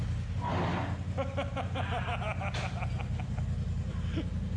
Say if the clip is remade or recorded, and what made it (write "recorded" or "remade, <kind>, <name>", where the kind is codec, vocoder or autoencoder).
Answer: recorded